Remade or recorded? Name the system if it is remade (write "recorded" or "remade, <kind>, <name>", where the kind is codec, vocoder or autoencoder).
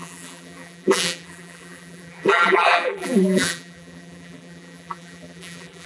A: remade, vocoder, BigVGAN v2